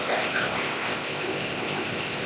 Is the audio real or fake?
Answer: fake